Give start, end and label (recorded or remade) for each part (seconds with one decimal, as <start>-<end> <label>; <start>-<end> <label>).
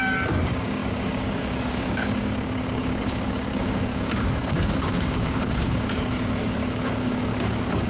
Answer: 0.0-7.9 remade